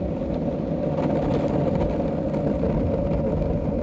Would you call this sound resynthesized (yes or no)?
no